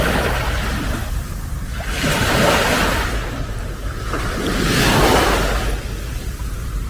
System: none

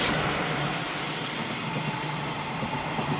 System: none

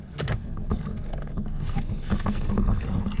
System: codec, SNAC